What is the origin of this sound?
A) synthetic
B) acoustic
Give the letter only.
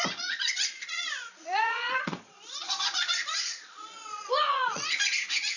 A